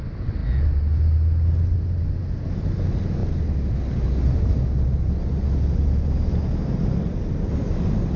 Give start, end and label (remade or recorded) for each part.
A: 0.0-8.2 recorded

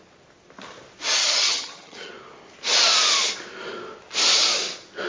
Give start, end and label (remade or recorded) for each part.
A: 0.0-1.2 recorded; 1.2-2.1 remade; 2.1-5.1 recorded

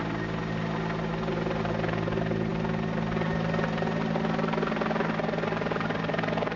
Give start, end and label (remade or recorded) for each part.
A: 0.0-6.6 recorded

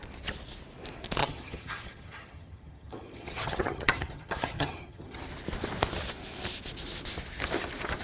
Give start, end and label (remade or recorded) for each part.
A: 0.0-1.2 recorded; 1.2-5.2 remade; 5.2-8.0 recorded

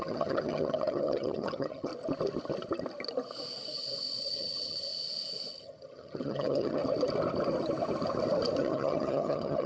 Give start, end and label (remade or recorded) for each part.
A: 0.0-1.9 remade; 1.9-4.2 recorded; 4.2-4.9 remade; 4.9-5.5 recorded; 5.5-6.8 remade; 6.8-8.6 recorded; 8.6-9.7 remade